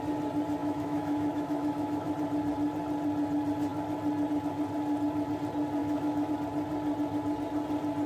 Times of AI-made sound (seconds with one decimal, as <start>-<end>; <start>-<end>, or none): 0.6-2.1; 5.8-6.3